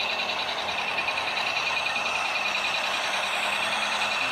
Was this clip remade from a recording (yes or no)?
no